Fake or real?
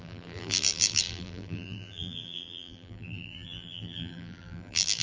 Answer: fake